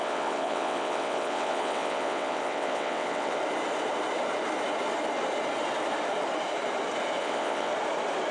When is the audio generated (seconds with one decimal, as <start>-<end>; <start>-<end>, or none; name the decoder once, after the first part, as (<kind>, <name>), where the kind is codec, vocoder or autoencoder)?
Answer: 0.0-3.4 (vocoder, WaveNeXt); 7.2-7.7